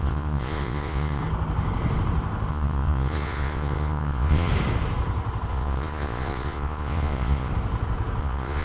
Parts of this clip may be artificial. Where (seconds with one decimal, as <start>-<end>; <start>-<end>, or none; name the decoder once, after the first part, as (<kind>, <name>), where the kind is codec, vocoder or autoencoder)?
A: 0.0-1.2 (vocoder, Vocos); 2.5-4.5; 5.5-7.5; 8.2-8.6